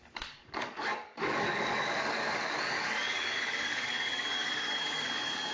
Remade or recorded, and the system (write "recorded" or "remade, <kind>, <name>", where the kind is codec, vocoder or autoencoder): remade, codec, DAC